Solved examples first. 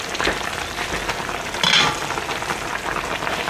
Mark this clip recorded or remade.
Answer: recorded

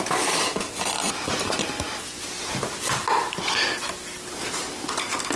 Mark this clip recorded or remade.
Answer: remade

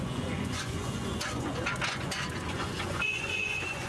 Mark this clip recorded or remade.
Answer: remade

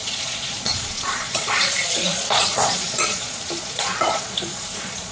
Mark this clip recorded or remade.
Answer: remade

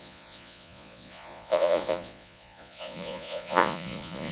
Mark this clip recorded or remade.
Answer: remade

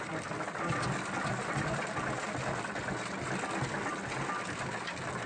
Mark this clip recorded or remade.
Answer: recorded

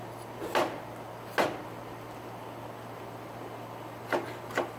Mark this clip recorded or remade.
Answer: recorded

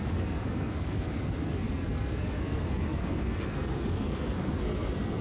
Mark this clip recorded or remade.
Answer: remade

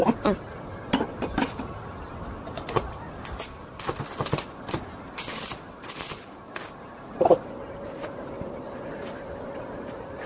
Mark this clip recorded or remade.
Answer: recorded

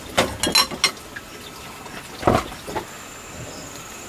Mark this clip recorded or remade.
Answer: recorded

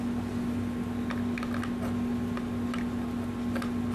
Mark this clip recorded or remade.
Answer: recorded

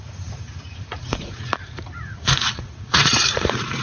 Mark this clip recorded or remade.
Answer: remade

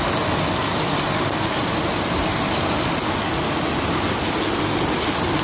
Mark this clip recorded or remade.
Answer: recorded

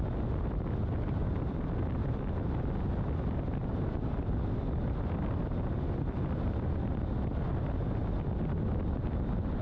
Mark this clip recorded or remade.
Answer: recorded